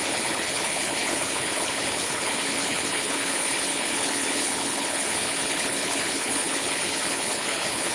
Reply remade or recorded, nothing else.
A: remade